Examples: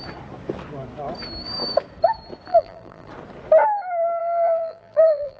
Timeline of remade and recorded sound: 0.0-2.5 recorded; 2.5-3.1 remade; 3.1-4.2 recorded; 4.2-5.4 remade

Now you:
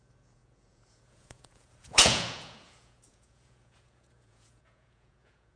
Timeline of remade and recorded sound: 0.0-5.6 remade

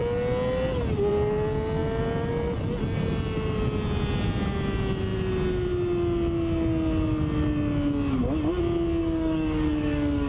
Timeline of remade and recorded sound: 0.0-9.0 recorded; 9.0-10.3 remade

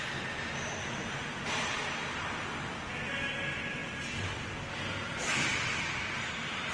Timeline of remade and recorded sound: 0.0-1.0 recorded; 1.0-2.5 remade; 2.5-6.7 recorded

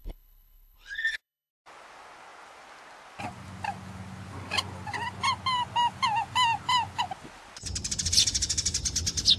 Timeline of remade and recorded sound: 0.0-1.5 remade; 1.5-9.4 recorded

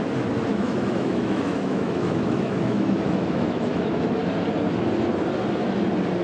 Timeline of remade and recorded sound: 0.0-0.5 recorded; 0.5-4.2 remade; 4.2-6.2 recorded

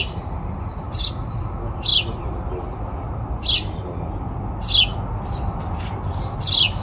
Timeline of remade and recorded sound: 0.0-6.8 recorded

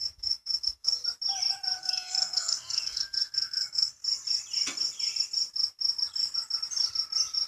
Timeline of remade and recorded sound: 0.0-1.0 remade; 1.0-1.8 recorded; 1.8-4.0 remade; 4.0-7.5 recorded